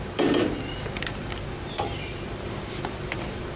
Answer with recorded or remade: remade